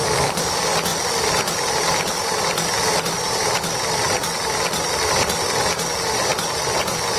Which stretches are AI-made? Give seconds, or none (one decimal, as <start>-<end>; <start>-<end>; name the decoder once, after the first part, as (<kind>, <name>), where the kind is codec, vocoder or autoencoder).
none